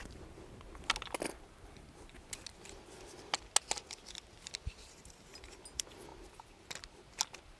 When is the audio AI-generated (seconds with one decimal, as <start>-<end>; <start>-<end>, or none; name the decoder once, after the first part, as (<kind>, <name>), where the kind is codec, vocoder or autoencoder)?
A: none